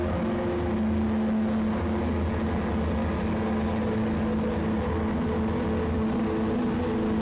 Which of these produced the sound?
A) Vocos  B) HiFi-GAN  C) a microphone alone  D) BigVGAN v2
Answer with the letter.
C